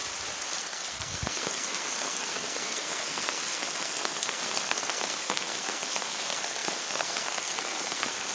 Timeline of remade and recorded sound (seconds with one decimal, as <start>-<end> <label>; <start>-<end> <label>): 0.0-0.6 recorded; 0.6-8.3 remade